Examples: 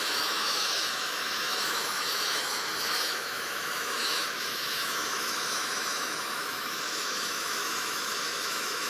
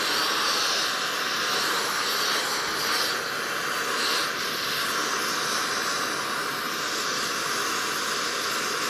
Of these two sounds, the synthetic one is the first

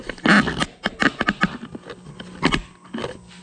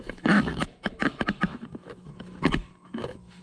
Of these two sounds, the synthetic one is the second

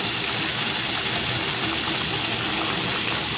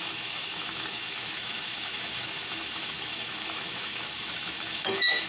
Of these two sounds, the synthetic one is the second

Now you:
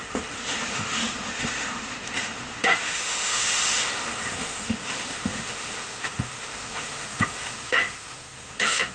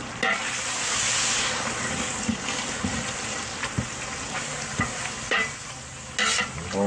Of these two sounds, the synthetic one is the first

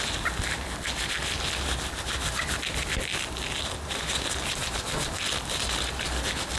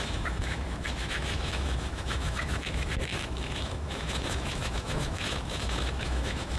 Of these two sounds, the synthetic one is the second